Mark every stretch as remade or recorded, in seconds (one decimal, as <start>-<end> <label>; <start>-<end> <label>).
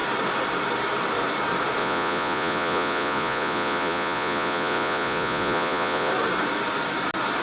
0.0-1.8 recorded; 1.8-6.1 remade; 6.1-7.4 recorded